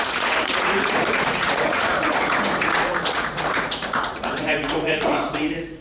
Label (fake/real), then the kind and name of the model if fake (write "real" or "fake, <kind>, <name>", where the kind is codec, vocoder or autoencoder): fake, vocoder, Vocos